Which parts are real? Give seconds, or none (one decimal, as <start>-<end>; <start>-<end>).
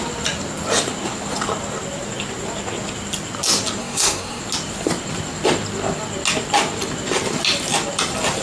0.0-3.8; 4.4-8.4